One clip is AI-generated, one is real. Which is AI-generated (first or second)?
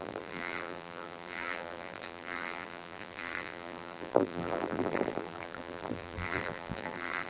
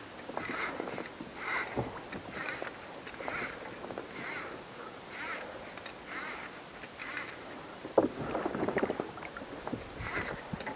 first